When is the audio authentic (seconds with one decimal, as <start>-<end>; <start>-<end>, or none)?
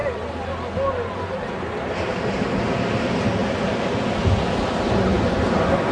0.0-5.9